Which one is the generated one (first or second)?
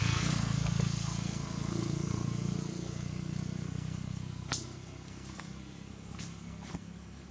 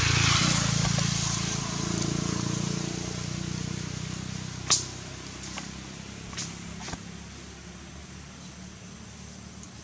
first